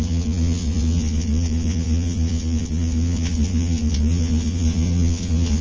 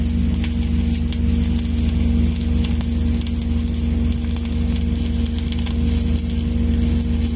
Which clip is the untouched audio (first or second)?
second